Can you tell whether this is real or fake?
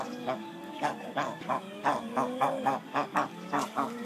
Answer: fake